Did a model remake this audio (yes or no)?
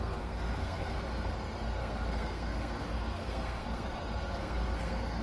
yes